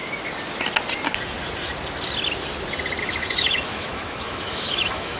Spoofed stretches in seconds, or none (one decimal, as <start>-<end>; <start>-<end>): 3.0-5.2